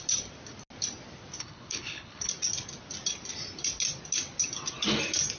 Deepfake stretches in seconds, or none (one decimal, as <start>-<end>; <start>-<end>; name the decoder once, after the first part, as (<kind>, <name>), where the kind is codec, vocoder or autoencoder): 1.4-2.3 (codec, HILCodec)

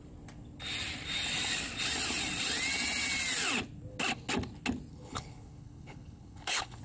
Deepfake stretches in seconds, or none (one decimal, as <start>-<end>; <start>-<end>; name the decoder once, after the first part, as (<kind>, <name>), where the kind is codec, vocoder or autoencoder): 4.9-6.8 (codec, HILCodec)

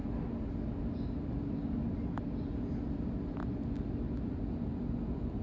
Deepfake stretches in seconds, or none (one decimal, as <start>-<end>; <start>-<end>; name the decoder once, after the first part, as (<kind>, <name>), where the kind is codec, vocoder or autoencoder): none

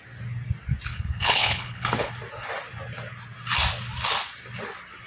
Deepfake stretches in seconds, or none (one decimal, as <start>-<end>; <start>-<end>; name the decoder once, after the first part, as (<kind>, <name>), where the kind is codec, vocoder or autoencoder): 0.9-2.1 (codec, HILCodec)